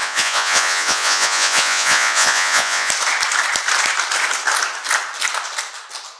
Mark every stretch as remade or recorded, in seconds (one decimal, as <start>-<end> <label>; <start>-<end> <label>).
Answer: 0.0-2.9 remade; 2.9-6.2 recorded